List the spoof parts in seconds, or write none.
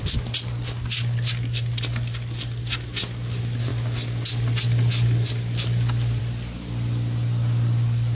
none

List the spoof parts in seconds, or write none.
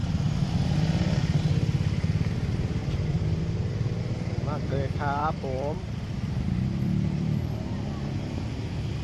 2.8-4.0 (vocoder, BigVGAN v2); 5.2-7.5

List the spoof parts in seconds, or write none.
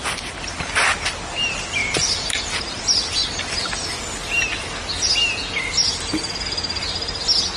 1.8-2.4 (vocoder, BigVGAN v2)